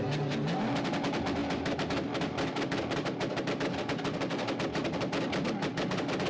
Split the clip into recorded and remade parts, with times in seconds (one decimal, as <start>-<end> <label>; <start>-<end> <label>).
0.0-6.3 recorded